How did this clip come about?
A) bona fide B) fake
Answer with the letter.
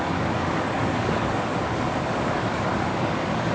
B